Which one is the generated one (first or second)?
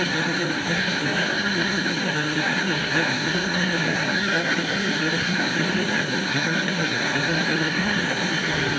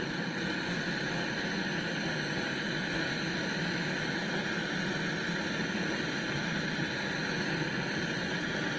first